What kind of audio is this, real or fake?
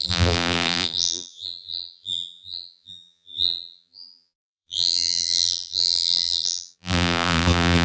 fake